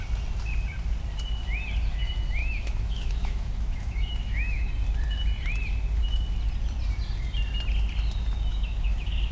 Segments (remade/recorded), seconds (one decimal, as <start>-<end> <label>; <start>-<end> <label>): 0.0-2.4 recorded; 2.4-4.7 remade; 4.7-8.5 recorded; 8.5-9.3 remade